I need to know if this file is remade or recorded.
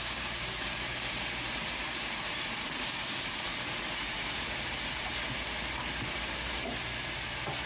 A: remade